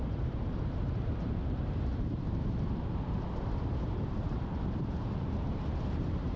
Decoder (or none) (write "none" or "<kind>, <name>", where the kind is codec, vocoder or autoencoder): vocoder, BigVGAN v2